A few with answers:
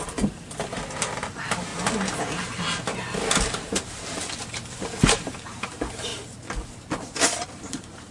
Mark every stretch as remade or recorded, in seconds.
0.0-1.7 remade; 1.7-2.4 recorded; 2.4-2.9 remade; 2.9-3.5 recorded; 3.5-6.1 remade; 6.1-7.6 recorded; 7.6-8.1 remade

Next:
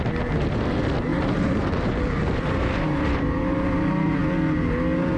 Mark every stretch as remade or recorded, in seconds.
0.0-1.1 recorded; 1.1-4.2 remade; 4.2-5.2 recorded